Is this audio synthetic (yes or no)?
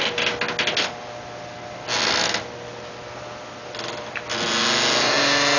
no